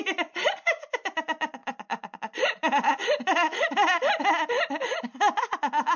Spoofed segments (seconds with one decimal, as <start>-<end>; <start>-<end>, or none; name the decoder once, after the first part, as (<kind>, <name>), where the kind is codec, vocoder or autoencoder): 1.6-4.3 (vocoder, BigVGAN v2)